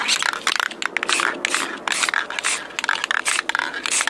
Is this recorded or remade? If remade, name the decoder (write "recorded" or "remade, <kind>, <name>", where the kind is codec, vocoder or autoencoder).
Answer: recorded